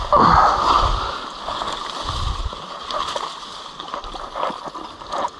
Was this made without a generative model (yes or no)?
yes